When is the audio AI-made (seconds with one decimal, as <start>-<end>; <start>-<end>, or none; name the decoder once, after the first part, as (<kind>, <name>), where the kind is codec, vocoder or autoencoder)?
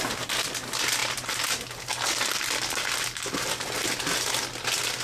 none